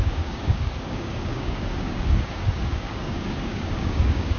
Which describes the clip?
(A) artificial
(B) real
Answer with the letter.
A